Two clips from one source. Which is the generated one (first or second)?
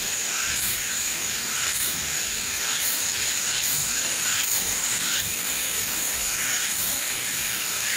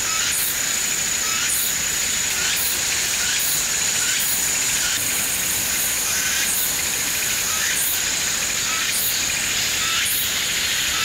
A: first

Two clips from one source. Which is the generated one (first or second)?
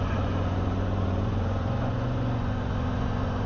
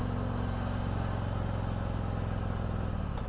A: first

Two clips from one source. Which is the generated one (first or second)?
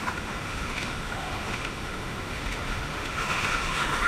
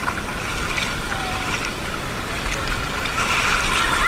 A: first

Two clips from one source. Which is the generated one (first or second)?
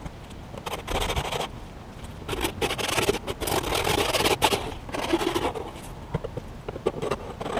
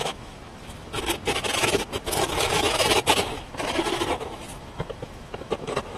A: second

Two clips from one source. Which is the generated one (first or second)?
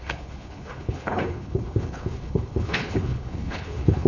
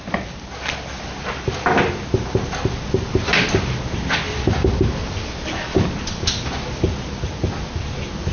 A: first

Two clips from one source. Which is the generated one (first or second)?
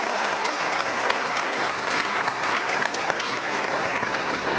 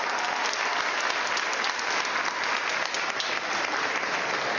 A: first